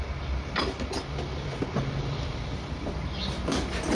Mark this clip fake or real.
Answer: real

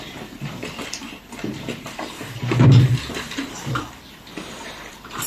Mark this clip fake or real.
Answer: fake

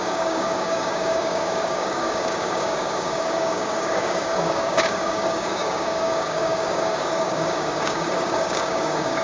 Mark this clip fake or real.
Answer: fake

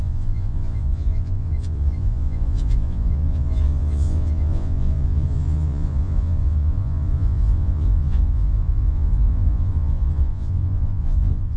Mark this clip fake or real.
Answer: fake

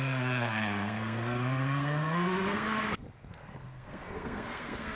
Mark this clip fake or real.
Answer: fake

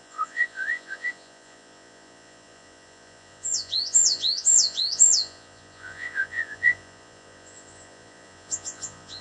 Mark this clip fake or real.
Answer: fake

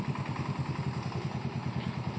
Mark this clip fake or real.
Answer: real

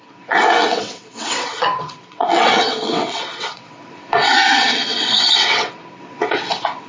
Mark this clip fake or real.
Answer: fake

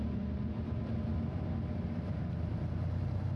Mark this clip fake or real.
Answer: real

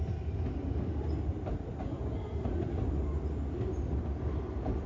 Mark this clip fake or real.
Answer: real